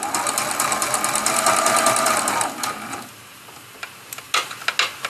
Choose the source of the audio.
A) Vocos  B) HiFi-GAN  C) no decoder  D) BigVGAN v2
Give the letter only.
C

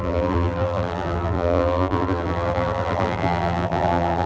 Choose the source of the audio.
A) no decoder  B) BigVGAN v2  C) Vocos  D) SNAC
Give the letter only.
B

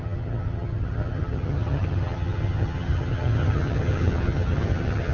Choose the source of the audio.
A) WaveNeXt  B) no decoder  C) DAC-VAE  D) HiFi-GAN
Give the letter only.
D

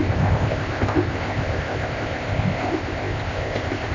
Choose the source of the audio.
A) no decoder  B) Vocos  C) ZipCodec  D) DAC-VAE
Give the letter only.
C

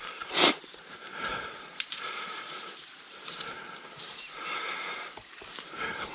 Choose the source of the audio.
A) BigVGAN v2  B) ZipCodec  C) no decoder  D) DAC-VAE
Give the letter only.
A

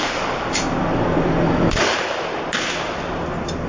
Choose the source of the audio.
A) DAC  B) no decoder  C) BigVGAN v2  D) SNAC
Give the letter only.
C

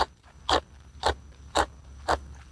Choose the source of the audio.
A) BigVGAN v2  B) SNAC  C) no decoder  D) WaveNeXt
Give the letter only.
A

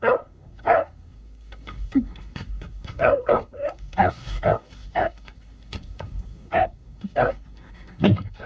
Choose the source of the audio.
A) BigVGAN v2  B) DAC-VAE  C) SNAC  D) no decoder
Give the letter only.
C